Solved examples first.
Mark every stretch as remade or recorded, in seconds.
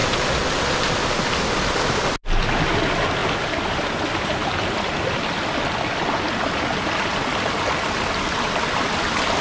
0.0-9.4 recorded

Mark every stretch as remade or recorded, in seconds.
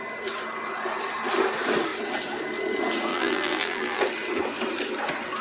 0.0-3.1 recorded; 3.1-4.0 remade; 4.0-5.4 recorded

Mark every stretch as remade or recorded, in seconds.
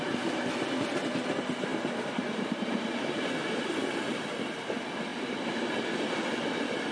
0.0-1.7 recorded; 1.7-3.6 remade; 3.6-5.1 recorded; 5.1-5.8 remade; 5.8-6.9 recorded